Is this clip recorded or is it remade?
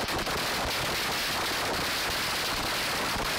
recorded